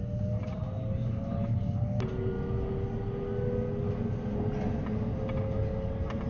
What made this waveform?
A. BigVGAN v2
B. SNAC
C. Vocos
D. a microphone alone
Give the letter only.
D